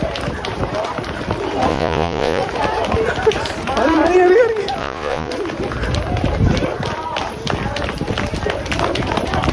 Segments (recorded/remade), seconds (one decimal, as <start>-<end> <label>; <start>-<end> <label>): 0.0-1.7 recorded; 1.7-2.4 remade; 2.4-4.8 recorded; 4.8-5.3 remade; 5.3-9.5 recorded